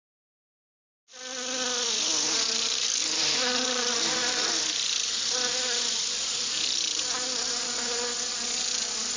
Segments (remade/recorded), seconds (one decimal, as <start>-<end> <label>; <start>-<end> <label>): 0.0-3.0 recorded; 3.0-4.5 remade; 4.5-9.2 recorded